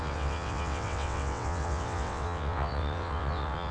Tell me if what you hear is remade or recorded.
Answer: remade